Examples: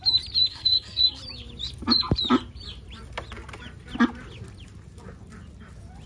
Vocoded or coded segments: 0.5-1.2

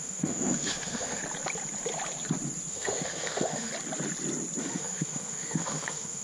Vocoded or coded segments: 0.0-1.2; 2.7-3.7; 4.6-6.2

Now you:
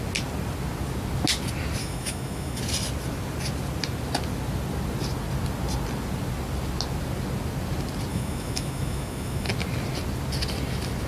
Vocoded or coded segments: 1.8-2.6; 8.1-9.5